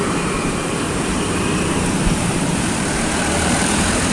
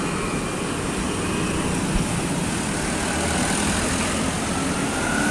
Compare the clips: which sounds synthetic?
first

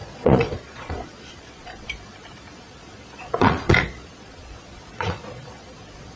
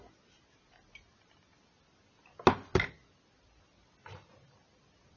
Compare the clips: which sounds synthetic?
first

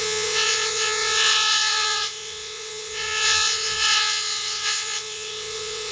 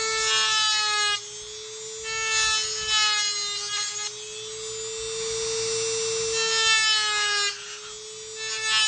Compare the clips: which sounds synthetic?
first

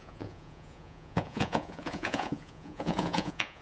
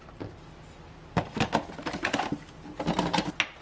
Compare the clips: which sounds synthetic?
first